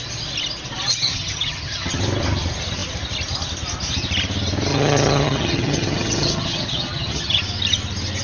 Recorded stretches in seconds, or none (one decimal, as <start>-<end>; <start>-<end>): 0.0-1.1; 2.0-4.7; 7.4-8.2